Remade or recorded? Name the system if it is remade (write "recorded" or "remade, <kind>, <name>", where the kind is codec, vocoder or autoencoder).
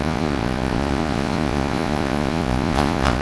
remade, vocoder, Vocos